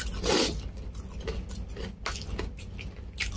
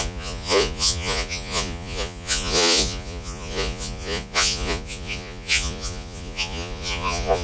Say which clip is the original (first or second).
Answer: first